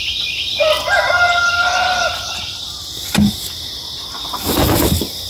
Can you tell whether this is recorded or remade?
recorded